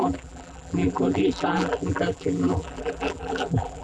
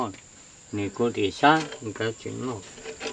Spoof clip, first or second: first